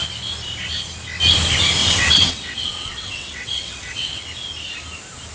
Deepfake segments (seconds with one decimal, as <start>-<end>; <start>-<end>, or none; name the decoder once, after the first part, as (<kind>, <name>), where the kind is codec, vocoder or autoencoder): 1.8-4.2 (vocoder, WaveNeXt)